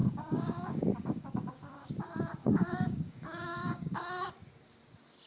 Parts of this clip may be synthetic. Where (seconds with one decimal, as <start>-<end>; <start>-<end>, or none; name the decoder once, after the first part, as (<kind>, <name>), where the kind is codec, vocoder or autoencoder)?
0.0-1.9 (codec, DAC); 2.4-4.3